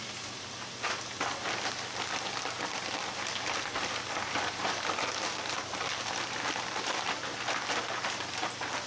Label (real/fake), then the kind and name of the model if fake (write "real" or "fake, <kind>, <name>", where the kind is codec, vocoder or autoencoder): real